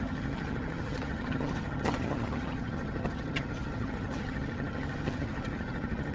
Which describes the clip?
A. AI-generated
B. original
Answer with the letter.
A